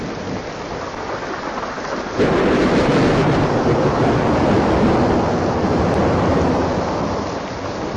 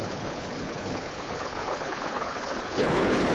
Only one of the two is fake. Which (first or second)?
second